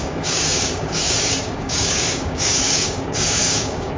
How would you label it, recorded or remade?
remade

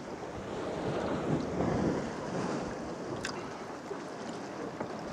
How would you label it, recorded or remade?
recorded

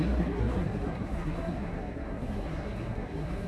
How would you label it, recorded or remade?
remade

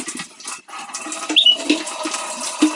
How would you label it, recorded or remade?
recorded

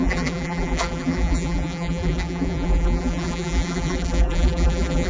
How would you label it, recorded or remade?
remade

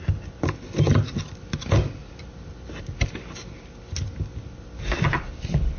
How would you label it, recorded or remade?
recorded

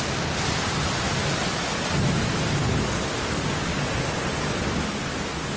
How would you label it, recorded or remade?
recorded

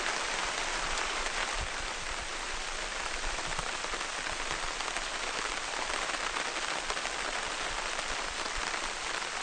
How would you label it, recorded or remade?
remade